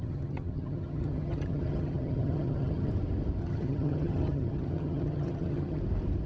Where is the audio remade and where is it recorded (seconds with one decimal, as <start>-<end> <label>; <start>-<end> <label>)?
0.0-2.9 remade; 2.9-3.4 recorded; 3.4-5.8 remade; 5.8-6.3 recorded